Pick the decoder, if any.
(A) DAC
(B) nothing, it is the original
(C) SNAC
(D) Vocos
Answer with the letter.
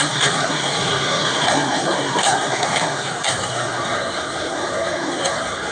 C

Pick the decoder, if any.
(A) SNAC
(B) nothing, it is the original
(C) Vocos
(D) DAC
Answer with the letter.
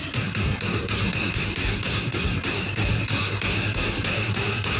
A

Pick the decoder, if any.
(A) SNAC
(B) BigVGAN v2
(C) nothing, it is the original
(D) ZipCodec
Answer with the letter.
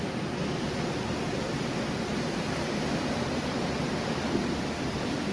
C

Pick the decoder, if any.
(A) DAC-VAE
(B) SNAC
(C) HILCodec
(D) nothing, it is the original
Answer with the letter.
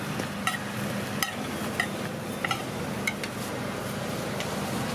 D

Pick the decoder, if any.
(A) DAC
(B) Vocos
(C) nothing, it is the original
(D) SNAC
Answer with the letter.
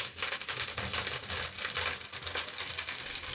C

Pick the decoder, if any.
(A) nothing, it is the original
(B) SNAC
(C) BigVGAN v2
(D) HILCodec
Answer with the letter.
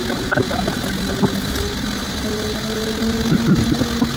A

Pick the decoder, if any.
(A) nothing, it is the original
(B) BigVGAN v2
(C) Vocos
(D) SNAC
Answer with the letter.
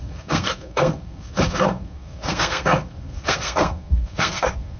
D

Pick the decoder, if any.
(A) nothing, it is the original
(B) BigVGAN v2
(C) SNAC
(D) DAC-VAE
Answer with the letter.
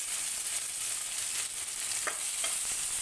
A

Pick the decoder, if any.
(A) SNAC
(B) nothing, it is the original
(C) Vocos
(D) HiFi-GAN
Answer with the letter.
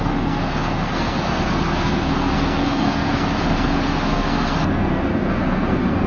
A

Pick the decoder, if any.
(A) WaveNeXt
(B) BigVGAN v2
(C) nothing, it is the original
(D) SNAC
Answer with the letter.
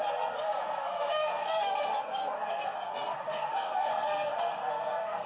D